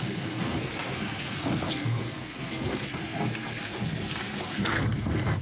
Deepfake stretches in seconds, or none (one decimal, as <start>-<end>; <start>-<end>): 0.0-5.4